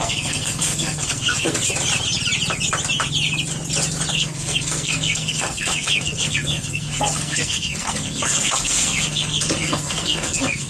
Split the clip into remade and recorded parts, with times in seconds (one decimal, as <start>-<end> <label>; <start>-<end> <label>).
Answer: 0.0-1.6 remade; 1.6-4.1 recorded; 4.1-10.7 remade